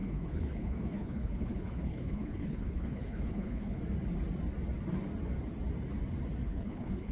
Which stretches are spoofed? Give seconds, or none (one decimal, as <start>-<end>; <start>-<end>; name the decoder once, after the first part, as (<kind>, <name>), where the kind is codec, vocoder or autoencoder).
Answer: 0.0-3.8 (codec, HILCodec); 6.4-7.1